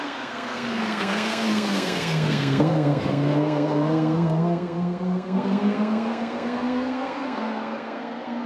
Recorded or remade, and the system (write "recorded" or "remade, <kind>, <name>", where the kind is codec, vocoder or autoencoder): remade, codec, SNAC